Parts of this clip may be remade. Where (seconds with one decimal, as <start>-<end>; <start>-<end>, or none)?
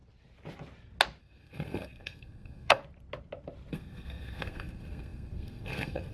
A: 1.2-2.8; 3.7-6.1